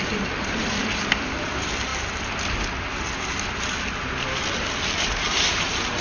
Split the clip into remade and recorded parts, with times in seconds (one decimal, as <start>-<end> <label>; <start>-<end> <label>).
0.0-1.9 remade; 1.9-4.8 recorded; 4.8-6.0 remade